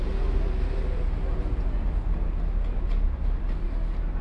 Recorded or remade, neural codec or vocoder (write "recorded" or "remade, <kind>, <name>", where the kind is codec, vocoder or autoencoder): recorded